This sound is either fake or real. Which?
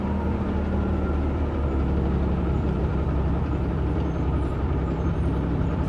fake